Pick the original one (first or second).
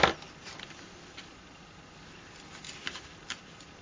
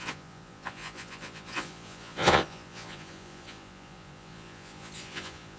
first